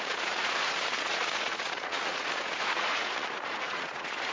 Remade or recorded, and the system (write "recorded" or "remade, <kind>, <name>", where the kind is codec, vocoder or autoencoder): remade, vocoder, Vocos